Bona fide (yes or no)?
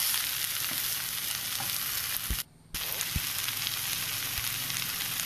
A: yes